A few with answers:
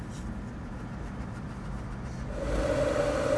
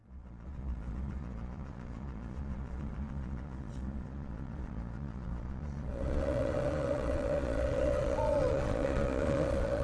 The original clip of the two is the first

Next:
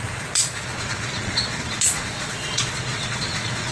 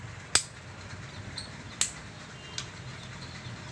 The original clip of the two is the second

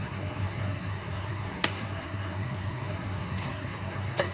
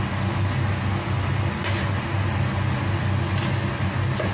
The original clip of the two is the second